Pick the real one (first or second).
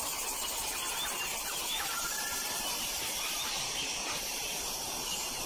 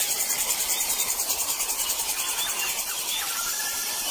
first